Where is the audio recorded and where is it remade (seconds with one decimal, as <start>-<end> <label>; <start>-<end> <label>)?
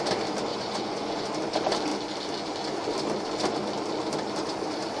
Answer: 0.0-0.5 recorded; 0.5-1.3 remade; 1.3-5.0 recorded